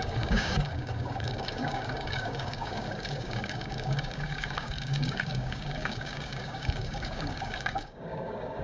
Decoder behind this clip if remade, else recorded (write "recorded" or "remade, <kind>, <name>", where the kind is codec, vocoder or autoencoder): remade, codec, DAC